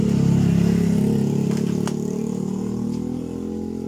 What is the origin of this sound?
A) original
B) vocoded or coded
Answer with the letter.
A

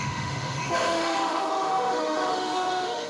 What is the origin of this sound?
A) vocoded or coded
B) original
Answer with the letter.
A